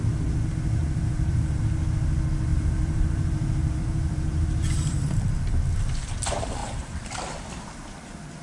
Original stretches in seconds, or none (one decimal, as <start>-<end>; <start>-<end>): 0.0-0.8; 1.6-2.5; 5.2-6.6; 7.2-8.4